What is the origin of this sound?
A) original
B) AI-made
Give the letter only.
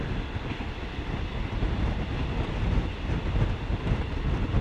A